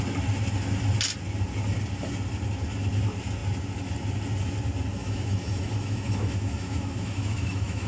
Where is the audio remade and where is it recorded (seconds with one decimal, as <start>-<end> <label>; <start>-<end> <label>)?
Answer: 0.0-5.0 recorded; 5.0-7.9 remade